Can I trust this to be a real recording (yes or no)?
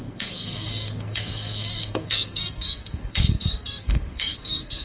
no